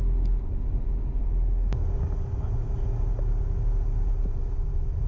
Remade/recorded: recorded